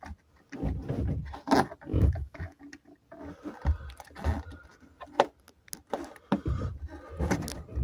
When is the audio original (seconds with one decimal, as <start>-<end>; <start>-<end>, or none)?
0.0-1.9; 2.6-7.8